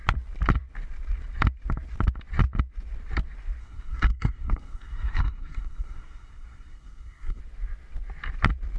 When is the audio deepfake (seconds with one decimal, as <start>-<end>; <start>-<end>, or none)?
3.6-7.4

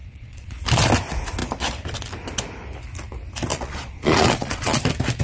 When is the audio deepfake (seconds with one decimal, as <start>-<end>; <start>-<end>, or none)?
0.0-0.6; 3.5-4.8

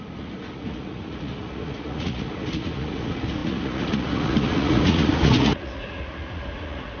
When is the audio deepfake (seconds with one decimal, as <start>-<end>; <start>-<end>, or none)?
0.0-7.0

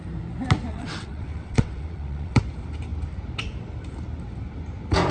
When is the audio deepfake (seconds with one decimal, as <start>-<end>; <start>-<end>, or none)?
0.7-2.4

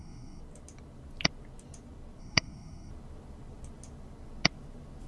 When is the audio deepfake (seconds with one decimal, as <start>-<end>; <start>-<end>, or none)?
0.0-0.4; 2.2-2.9